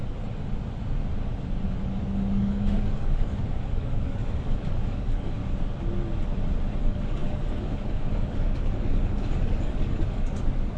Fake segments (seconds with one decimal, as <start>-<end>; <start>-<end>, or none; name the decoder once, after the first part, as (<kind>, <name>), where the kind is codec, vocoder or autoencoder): 2.0-5.4 (codec, DAC); 6.8-10.8